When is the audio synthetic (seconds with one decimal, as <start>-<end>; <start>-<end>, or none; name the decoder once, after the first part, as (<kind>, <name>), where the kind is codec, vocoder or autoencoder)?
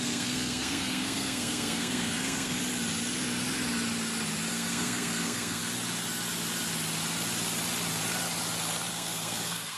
0.0-2.6 (codec, SNAC); 4.5-5.6; 8.9-9.8